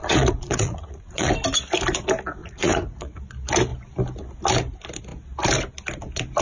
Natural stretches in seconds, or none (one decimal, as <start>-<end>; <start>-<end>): 1.3-2.4; 3.2-6.4